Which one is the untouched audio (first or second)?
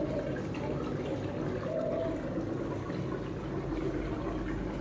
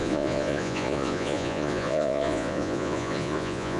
first